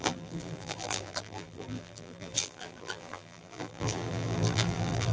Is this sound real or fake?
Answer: fake